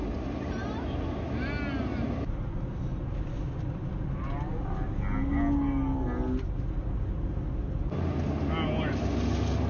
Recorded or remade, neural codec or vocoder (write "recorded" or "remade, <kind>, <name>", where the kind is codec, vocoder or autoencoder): recorded